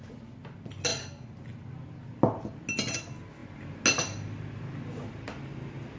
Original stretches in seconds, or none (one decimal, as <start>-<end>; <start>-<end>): 0.0-6.0